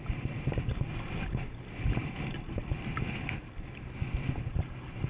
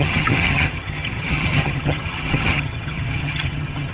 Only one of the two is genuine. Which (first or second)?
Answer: first